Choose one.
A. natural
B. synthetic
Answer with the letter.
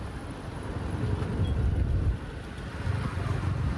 A